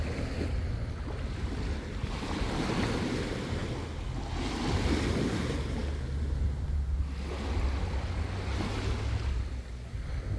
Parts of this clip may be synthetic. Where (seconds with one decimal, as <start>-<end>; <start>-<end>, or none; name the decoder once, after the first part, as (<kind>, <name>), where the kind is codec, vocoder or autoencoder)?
none